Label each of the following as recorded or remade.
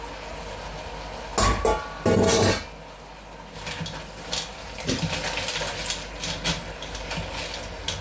recorded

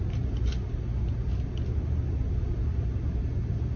recorded